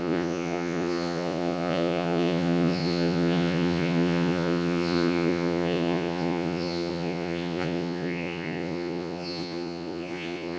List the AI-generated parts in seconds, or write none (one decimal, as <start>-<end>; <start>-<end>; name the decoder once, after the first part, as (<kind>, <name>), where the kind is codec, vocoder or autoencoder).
0.0-10.6 (vocoder, Vocos)